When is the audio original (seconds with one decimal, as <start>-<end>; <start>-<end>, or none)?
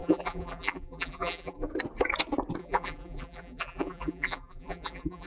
1.7-2.6